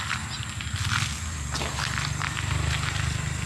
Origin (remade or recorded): recorded